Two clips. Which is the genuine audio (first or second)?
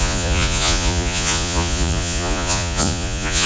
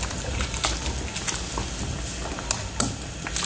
second